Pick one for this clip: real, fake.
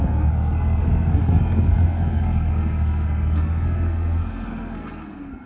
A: fake